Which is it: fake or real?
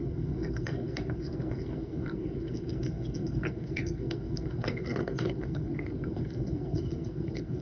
fake